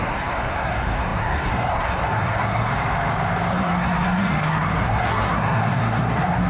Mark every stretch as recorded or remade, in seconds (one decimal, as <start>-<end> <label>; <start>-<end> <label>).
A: 0.0-2.7 remade; 2.7-3.5 recorded; 3.5-6.5 remade